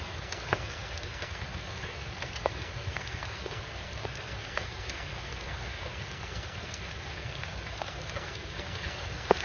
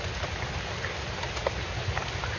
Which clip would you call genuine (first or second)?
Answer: second